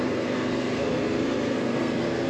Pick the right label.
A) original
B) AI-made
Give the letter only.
B